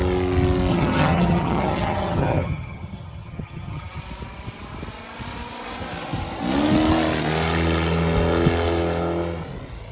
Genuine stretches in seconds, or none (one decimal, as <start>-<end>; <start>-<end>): 0.0-0.7; 4.0-9.9